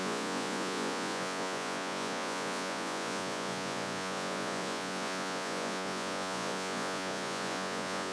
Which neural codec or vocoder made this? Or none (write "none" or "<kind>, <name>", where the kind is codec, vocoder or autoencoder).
vocoder, Vocos